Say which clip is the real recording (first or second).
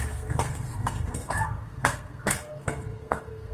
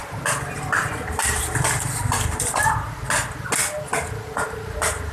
second